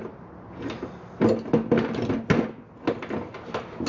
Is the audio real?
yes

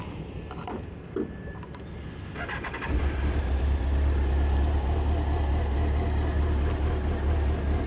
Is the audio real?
yes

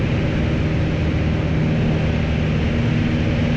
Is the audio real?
yes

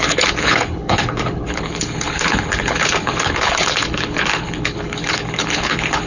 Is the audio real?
no